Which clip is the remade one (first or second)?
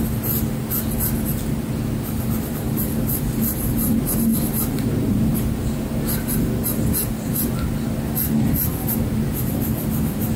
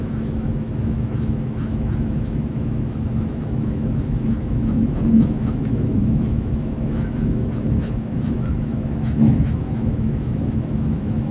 second